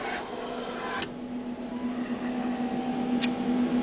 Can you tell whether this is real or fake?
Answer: real